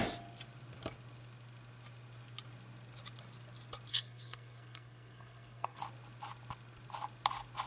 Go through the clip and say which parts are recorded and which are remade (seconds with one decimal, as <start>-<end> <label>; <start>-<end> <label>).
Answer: 0.0-3.9 recorded; 3.9-5.8 remade; 5.8-7.7 recorded